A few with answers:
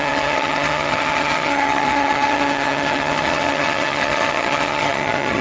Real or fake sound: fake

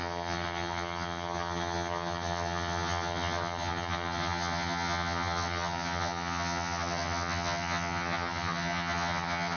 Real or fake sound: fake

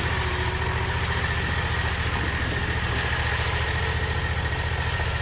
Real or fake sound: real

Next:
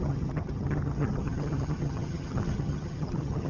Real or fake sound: fake